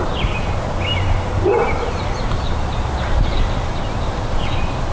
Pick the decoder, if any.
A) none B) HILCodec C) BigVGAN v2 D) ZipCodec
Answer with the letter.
C